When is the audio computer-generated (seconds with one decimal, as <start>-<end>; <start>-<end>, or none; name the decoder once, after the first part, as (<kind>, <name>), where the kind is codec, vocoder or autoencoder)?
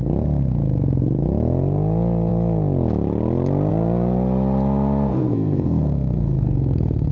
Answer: 5.1-7.1 (codec, SNAC)